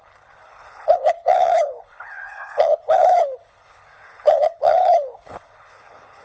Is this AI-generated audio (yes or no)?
yes